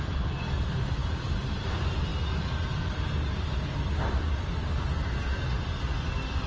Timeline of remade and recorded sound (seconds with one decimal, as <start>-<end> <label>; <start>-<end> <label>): 0.0-6.5 recorded

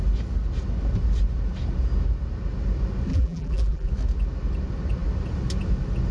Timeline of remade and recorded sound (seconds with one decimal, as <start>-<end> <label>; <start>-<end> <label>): 0.0-3.1 recorded; 3.1-3.9 remade; 3.9-6.1 recorded

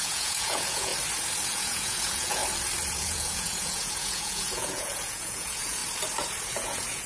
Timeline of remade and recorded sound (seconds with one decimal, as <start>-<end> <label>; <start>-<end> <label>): 0.0-0.9 remade; 0.9-1.5 recorded; 1.5-2.4 remade; 2.4-3.0 recorded; 3.0-5.8 remade; 5.8-6.5 recorded; 6.5-7.1 remade